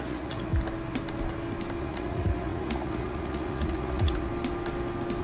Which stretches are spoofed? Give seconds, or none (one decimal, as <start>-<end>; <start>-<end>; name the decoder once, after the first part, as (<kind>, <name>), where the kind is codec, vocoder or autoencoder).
0.0-0.5 (vocoder, Vocos); 1.8-4.3